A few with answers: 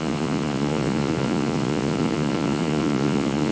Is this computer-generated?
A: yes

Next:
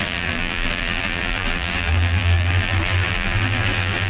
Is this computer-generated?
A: yes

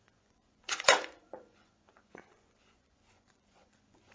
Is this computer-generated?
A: yes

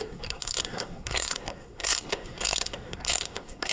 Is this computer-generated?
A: yes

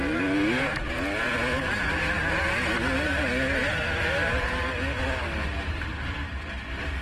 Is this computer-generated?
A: no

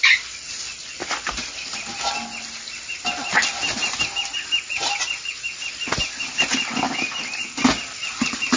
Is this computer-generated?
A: no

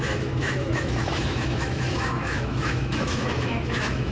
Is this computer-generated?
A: yes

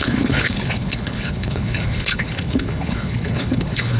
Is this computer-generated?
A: yes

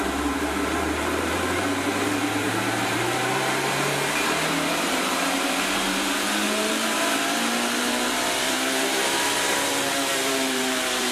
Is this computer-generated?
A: yes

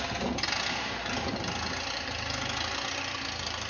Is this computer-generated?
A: no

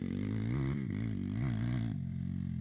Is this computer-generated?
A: no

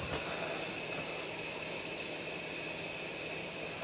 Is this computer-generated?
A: no